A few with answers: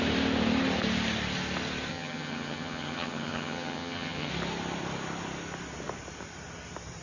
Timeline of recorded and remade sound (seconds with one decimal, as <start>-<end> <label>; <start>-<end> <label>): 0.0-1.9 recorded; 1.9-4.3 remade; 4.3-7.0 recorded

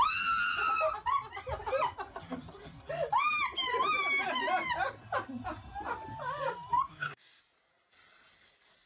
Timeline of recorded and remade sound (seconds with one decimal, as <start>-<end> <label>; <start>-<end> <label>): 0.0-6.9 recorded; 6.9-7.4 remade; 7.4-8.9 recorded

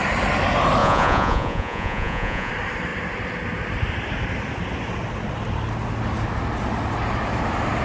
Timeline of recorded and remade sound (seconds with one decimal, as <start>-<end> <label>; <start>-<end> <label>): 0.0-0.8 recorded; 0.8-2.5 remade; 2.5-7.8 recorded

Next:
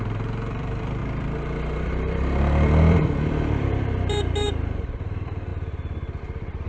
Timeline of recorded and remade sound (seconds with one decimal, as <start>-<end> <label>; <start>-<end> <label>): 0.0-5.5 remade; 5.5-6.2 recorded; 6.2-6.7 remade

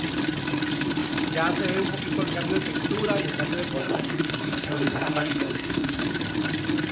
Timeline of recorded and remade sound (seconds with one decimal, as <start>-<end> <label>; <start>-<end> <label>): 0.0-3.8 recorded; 3.8-6.0 remade; 6.0-6.9 recorded

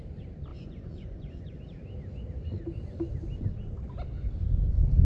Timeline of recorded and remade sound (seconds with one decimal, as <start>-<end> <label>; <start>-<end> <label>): 0.0-0.5 recorded; 0.5-1.6 remade; 1.6-5.0 recorded